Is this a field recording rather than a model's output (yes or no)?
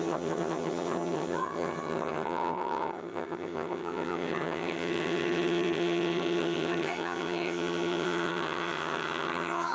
no